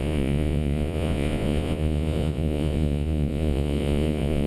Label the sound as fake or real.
fake